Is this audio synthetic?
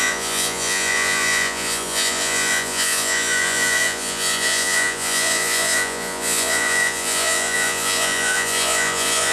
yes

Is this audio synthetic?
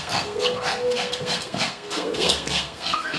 yes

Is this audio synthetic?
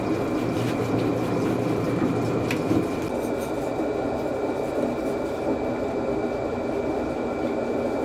no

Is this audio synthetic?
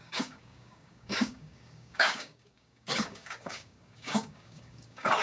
yes